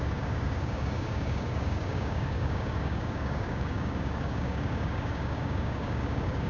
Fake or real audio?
fake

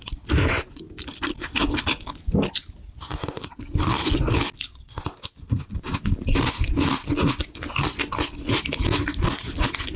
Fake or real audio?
real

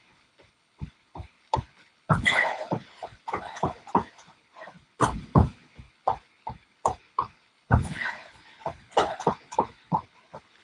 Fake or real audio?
fake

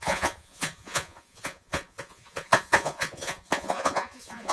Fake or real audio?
fake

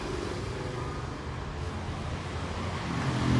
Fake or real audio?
real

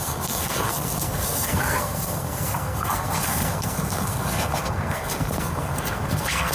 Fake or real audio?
fake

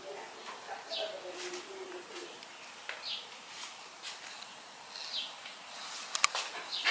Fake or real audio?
real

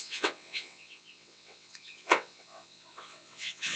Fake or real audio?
fake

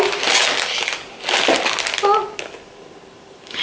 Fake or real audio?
real